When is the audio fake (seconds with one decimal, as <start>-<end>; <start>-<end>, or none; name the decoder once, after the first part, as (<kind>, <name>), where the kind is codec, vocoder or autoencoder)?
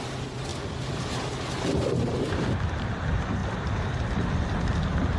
0.0-0.5 (vocoder, BigVGAN v2); 2.8-5.2